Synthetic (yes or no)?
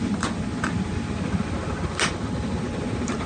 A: no